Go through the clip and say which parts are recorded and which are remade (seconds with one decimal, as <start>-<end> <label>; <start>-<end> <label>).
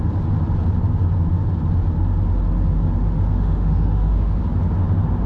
0.0-3.3 recorded; 3.3-4.4 remade; 4.4-5.3 recorded